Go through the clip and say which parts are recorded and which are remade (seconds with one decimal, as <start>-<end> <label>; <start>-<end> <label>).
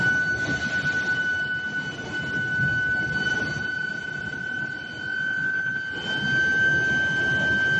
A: 0.0-7.8 recorded